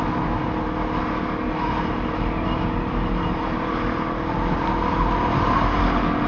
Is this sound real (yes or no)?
yes